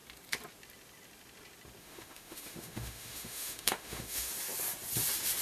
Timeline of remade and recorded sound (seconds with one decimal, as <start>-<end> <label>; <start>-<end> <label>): 0.0-1.8 recorded; 1.8-4.3 remade; 4.3-5.4 recorded